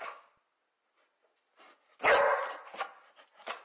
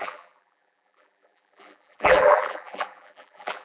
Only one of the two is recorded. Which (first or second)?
first